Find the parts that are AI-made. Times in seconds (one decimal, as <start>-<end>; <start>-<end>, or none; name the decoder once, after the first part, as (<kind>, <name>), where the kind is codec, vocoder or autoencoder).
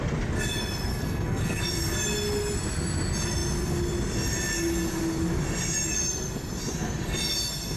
0.9-1.6 (codec, SNAC)